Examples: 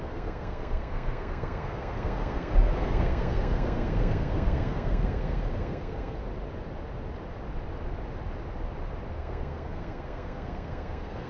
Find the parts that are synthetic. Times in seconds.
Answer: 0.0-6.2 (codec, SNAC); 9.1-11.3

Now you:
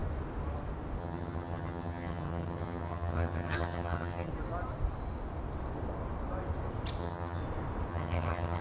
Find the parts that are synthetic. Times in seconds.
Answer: 1.0-4.3 (vocoder, HiFi-GAN); 7.0-7.4; 7.9-8.6

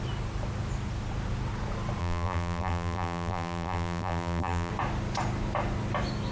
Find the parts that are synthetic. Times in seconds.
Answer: 2.0-4.7 (vocoder, BigVGAN v2)

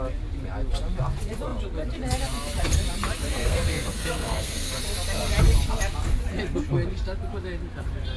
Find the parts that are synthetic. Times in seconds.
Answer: 3.3-4.8 (codec, SNAC)

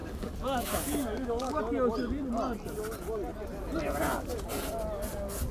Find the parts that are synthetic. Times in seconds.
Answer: 0.0-1.6 (codec, DAC)

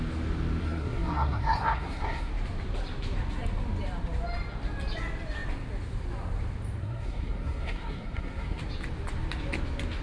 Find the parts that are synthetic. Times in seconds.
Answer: 0.6-2.3 (codec, SNAC); 6.8-8.6